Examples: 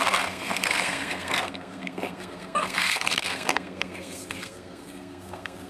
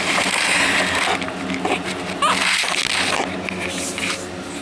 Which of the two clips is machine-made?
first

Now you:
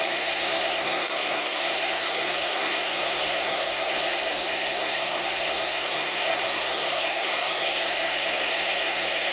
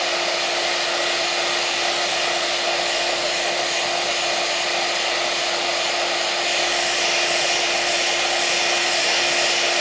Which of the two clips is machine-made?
first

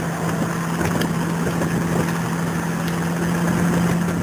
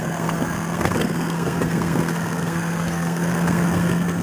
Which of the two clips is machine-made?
second